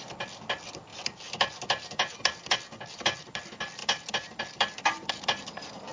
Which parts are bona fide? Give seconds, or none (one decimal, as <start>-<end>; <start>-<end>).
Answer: none

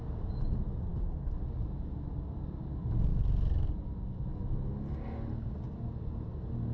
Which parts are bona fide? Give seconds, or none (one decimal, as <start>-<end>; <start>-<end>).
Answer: 0.0-6.7

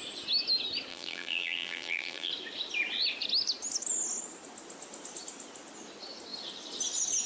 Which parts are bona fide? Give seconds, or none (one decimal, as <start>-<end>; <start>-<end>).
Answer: 0.0-0.9; 2.3-7.3

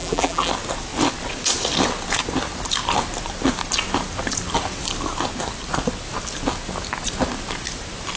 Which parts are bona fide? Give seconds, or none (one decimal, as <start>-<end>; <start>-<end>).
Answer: 0.5-8.2